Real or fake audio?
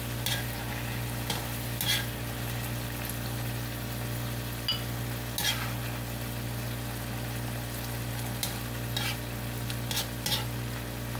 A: real